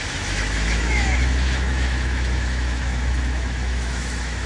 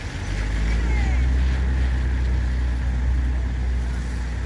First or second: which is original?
second